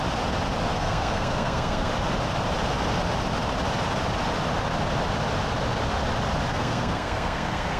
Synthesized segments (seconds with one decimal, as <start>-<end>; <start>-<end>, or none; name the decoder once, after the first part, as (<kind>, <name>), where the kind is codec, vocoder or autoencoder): 0.7-1.9 (codec, SNAC); 6.5-7.8